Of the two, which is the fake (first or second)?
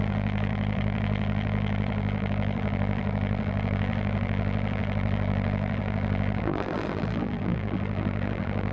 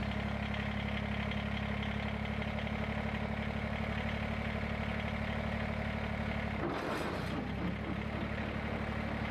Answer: first